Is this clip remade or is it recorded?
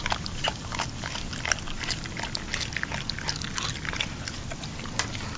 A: recorded